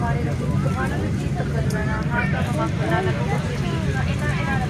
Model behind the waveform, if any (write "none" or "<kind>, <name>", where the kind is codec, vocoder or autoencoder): none